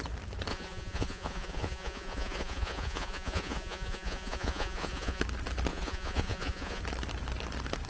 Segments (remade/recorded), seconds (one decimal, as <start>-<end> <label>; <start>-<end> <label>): 0.0-0.5 recorded; 0.5-5.2 remade; 5.2-5.7 recorded; 5.7-6.8 remade; 6.8-7.9 recorded